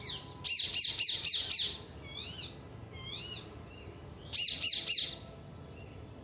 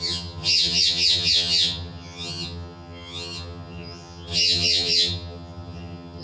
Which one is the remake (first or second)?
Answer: second